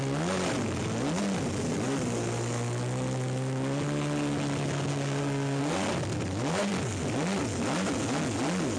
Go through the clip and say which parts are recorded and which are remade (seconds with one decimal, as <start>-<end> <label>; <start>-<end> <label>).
0.0-4.9 recorded; 4.9-5.6 remade; 5.6-8.8 recorded